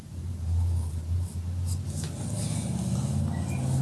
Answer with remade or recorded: recorded